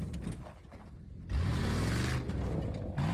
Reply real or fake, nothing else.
real